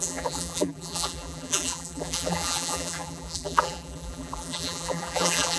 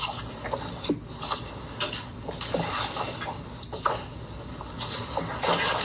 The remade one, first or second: first